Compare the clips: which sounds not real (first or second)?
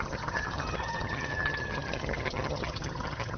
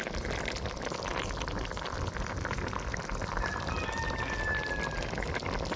first